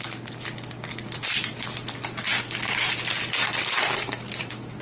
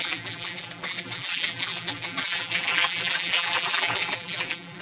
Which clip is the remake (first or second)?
second